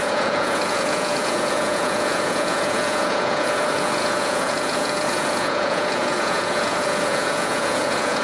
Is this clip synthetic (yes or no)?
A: yes